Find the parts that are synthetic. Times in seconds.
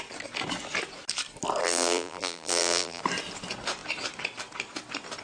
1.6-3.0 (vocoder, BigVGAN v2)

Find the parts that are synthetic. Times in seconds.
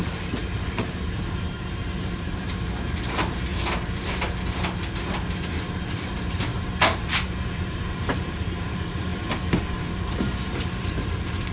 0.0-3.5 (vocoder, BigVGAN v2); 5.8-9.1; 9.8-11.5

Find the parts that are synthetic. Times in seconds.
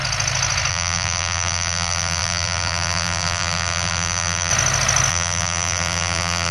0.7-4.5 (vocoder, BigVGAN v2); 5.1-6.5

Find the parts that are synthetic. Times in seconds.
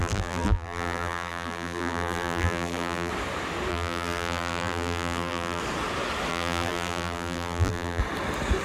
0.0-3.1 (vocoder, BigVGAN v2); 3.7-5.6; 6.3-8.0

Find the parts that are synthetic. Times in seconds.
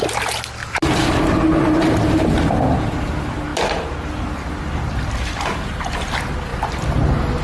0.6-2.3 (vocoder, BigVGAN v2)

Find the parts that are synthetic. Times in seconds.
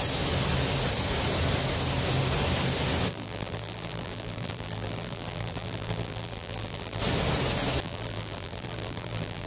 3.1-7.0 (vocoder, BigVGAN v2); 7.8-9.5